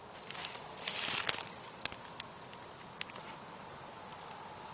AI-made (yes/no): no